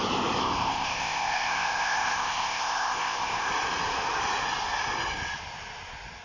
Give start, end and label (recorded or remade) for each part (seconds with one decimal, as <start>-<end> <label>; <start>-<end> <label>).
0.0-0.4 recorded; 0.4-3.5 remade; 3.5-6.2 recorded